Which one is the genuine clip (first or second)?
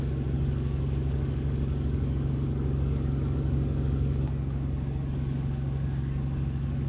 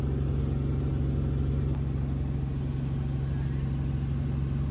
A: second